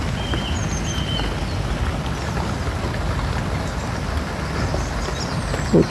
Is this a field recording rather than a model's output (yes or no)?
yes